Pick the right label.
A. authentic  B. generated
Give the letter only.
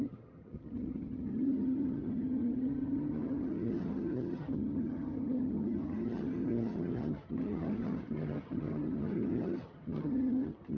B